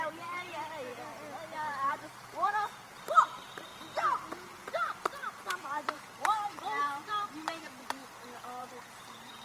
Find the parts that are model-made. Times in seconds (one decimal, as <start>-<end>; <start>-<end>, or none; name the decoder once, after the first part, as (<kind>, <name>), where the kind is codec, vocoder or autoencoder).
0.0-0.9 (vocoder, BigVGAN v2); 1.9-3.7; 4.5-8.0; 8.6-9.4